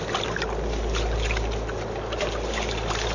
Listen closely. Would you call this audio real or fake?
real